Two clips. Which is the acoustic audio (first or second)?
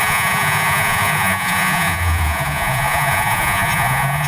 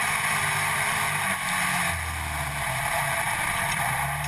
second